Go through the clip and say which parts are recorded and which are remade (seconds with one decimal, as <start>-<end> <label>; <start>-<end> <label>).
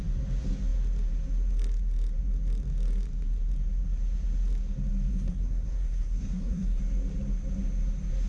0.0-5.1 recorded; 5.1-6.8 remade; 6.8-8.3 recorded